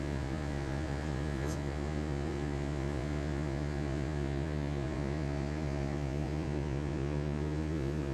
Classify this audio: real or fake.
fake